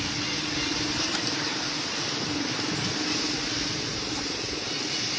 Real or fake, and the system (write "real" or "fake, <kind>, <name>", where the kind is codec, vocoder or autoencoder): fake, vocoder, BigVGAN v2